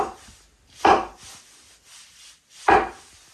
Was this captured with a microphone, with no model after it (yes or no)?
yes